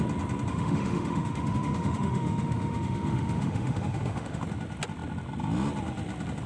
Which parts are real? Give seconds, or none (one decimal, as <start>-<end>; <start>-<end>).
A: 0.0-0.5; 4.4-6.5